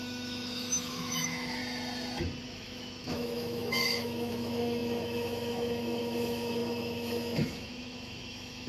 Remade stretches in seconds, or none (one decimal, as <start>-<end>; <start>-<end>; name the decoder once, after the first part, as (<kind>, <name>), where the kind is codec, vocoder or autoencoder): 0.0-1.6 (autoencoder, DAC-VAE); 2.4-8.7